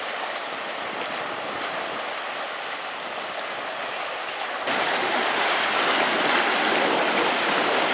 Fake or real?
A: real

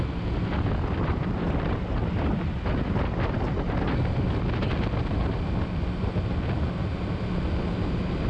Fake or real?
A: real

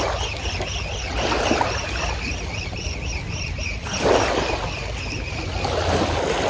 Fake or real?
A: real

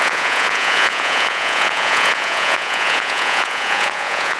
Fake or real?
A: fake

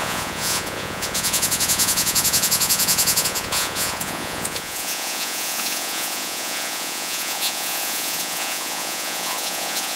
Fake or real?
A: fake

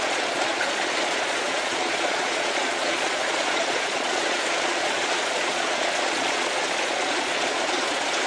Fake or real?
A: fake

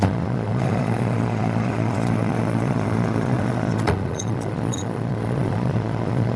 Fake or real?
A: fake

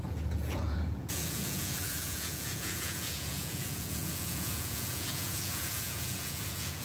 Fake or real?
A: fake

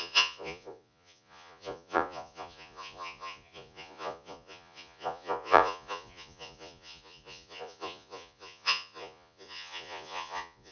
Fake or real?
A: fake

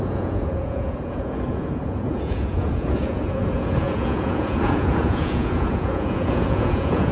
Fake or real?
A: fake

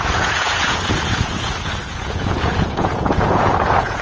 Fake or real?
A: fake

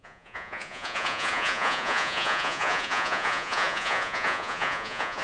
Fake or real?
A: fake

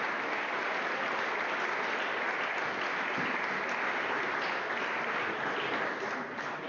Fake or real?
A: real